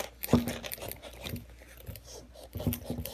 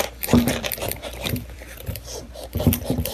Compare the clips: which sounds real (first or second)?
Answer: first